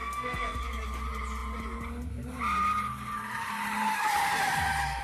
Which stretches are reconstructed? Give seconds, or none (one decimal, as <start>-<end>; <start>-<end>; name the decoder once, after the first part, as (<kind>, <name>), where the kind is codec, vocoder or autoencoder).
0.0-0.6 (codec, SNAC)